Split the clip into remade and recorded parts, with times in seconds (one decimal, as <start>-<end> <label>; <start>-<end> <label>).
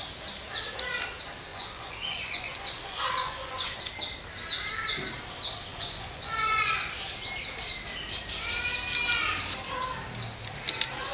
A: 0.0-1.5 recorded; 1.5-3.8 remade; 3.8-5.7 recorded; 5.7-6.7 remade; 6.7-11.1 recorded